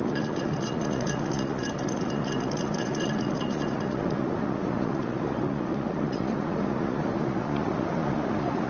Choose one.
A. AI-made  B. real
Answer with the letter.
A